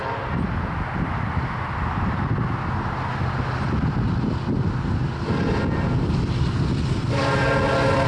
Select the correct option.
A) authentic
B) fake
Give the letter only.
A